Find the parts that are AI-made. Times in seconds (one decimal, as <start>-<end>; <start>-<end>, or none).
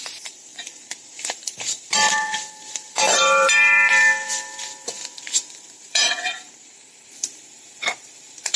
0.0-8.6